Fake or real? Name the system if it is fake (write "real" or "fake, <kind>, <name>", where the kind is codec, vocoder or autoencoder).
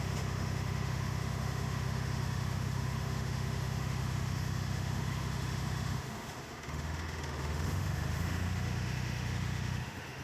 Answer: fake, autoencoder, DAC-VAE